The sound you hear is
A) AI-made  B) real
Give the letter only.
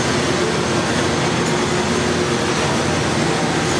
B